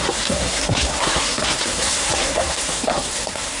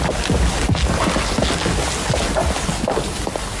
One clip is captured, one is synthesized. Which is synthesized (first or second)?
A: first